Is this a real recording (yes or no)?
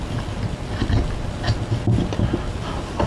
yes